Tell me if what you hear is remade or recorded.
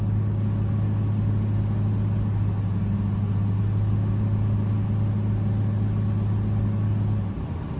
recorded